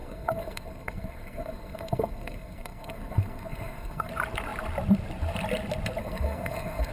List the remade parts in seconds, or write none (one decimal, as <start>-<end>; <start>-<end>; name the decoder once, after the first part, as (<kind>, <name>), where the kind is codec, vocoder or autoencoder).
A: 0.0-4.1 (codec, SNAC); 6.0-6.9